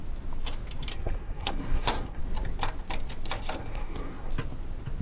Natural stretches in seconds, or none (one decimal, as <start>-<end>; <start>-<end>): 0.0-0.9; 2.2-3.6; 4.3-5.0